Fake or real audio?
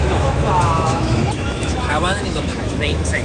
fake